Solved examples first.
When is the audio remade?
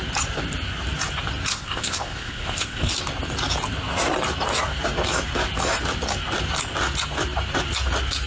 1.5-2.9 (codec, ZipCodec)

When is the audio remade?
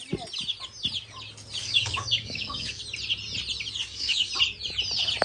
1.6-2.8 (codec, DAC); 3.8-4.3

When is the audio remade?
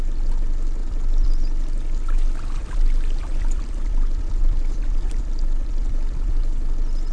0.8-1.4 (vocoder, BigVGAN v2); 2.6-6.4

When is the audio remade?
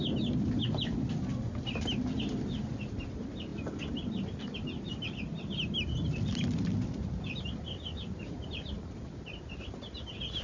0.0-3.5 (vocoder, BigVGAN v2); 4.9-10.4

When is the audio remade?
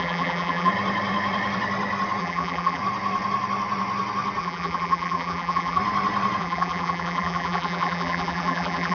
0.0-0.7 (vocoder, BigVGAN v2); 2.2-2.8; 4.4-5.8; 6.4-8.9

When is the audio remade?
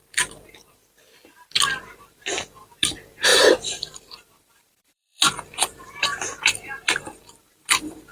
0.0-0.8 (vocoder, BigVGAN v2); 1.8-8.1